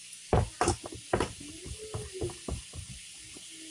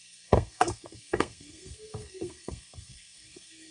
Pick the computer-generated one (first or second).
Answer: second